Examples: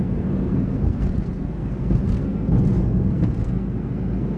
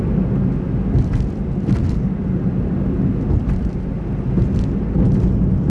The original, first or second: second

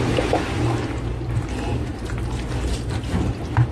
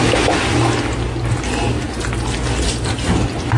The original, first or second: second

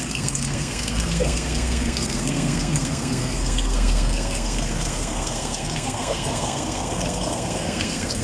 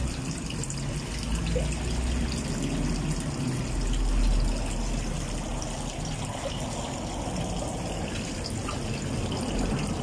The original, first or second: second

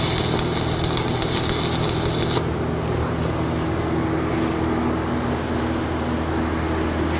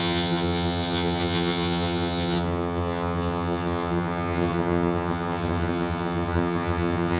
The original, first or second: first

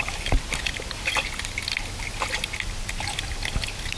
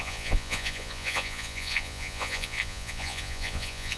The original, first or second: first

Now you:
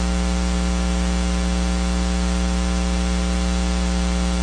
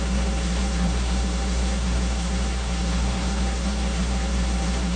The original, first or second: first